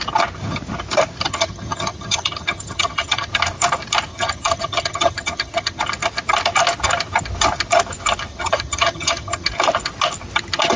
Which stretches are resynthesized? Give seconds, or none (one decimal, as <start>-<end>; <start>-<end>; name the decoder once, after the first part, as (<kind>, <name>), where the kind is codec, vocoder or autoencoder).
1.3-3.3 (vocoder, HiFi-GAN); 4.1-5.8; 8.3-9.5